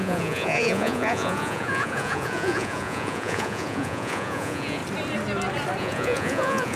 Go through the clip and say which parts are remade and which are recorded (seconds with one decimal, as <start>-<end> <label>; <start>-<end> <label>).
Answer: 0.0-4.8 remade; 4.8-5.8 recorded; 5.8-6.8 remade